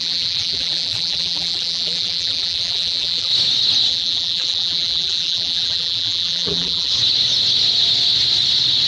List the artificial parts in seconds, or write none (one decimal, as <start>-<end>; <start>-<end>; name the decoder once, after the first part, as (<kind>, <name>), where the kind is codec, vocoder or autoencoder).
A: 0.0-3.3 (vocoder, BigVGAN v2); 3.9-6.9